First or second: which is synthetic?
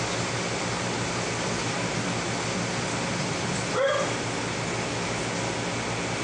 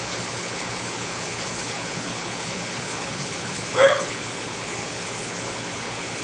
second